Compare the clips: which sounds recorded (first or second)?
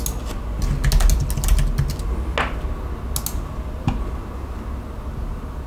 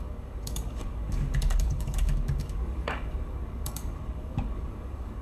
first